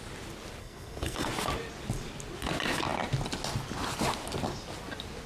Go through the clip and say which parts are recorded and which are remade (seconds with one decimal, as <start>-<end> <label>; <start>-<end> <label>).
0.0-0.6 recorded; 0.6-1.3 remade; 1.3-5.3 recorded